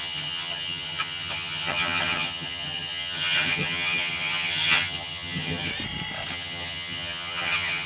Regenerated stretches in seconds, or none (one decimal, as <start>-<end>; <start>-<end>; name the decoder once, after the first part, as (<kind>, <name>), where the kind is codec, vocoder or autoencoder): 0.0-5.7 (vocoder, HiFi-GAN); 6.3-7.9